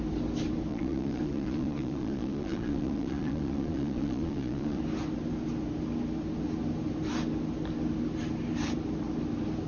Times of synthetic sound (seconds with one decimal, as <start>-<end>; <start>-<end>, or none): 0.7-4.8